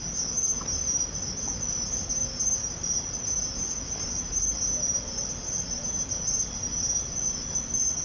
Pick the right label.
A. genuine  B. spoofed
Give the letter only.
A